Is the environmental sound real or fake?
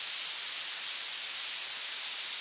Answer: real